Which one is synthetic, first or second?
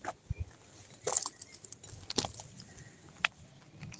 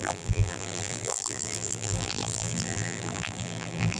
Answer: second